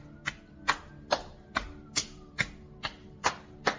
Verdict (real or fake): real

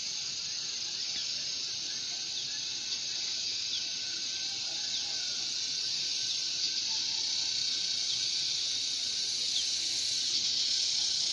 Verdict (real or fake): real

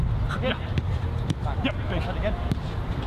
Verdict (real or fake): real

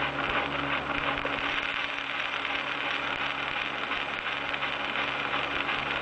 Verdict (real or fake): real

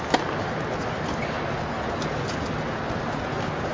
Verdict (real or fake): real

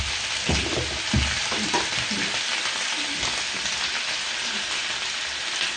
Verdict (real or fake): real